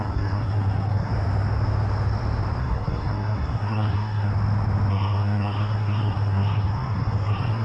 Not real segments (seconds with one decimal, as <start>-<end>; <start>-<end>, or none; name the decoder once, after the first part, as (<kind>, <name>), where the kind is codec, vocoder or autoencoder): 0.0-1.1 (codec, SNAC); 2.6-4.3; 4.9-7.6